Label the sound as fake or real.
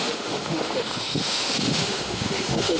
fake